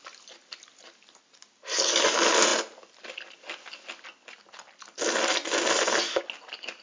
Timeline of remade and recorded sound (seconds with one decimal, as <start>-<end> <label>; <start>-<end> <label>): 0.0-6.8 recorded